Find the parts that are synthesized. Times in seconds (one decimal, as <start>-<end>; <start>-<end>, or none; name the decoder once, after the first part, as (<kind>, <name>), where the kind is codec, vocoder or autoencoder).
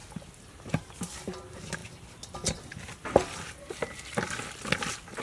none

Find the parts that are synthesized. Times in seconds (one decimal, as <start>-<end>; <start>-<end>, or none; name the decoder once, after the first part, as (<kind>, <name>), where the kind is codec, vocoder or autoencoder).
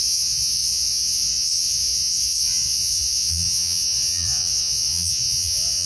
0.0-5.9 (vocoder, Vocos)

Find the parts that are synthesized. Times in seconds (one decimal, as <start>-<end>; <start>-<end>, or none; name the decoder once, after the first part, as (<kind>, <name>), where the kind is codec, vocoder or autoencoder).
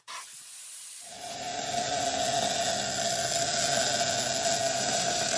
0.0-1.5 (vocoder, BigVGAN v2); 4.7-5.4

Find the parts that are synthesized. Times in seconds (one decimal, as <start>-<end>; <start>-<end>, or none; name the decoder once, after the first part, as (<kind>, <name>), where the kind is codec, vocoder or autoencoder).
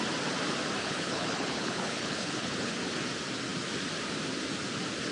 0.8-2.7 (codec, HILCodec)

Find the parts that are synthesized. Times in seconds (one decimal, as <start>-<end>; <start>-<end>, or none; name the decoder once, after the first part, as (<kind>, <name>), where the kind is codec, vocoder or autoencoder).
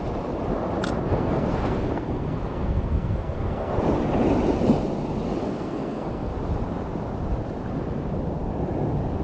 1.1-3.7 (codec, SNAC); 5.4-6.3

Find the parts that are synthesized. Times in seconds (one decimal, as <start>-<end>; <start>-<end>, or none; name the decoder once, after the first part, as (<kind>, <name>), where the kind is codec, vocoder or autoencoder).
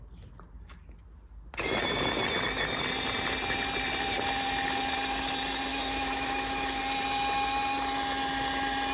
5.7-6.8 (autoencoder, DAC-VAE)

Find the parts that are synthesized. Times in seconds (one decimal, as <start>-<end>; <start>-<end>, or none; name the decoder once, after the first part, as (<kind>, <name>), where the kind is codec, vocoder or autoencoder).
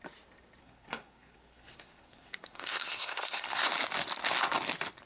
0.6-3.7 (codec, SNAC)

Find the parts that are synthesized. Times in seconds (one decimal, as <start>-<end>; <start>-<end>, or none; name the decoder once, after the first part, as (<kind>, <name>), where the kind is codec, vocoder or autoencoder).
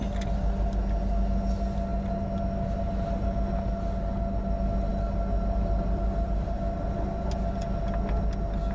none